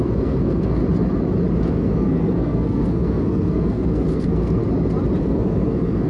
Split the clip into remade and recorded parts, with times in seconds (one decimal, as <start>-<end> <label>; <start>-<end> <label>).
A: 0.0-0.8 remade; 0.8-1.6 recorded; 1.6-4.6 remade; 4.6-5.2 recorded; 5.2-6.1 remade